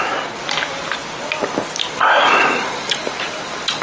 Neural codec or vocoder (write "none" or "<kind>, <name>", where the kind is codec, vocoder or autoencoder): vocoder, BigVGAN v2